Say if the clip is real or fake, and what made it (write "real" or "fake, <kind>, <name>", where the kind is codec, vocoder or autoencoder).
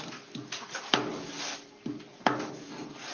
real